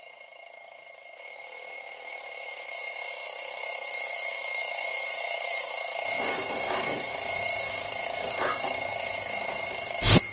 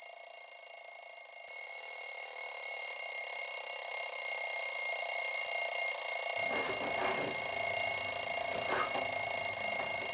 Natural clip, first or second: second